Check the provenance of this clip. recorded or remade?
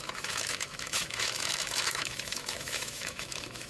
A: remade